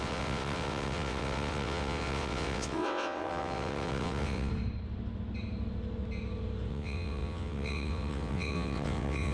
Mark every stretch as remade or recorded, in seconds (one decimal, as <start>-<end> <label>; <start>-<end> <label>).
0.0-4.5 remade; 4.5-6.7 recorded; 6.7-9.3 remade